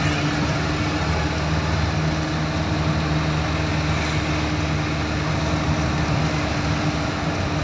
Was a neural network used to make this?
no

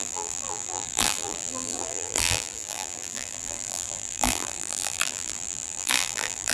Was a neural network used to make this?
yes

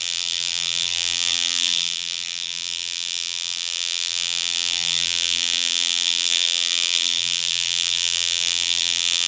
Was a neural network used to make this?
yes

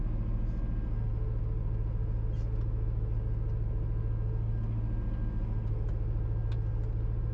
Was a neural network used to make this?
no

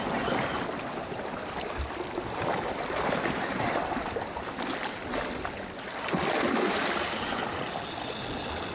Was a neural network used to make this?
no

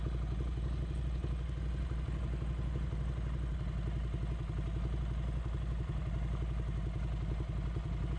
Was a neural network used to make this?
no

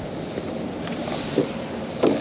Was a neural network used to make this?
no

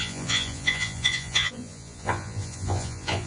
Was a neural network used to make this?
yes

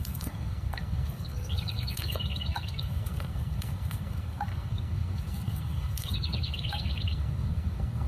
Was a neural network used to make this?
yes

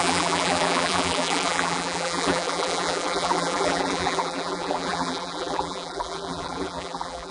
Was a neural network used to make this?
yes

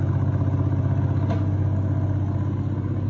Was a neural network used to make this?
no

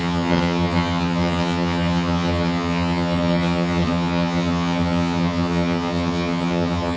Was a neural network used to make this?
yes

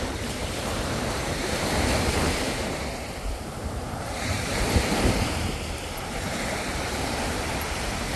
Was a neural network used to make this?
yes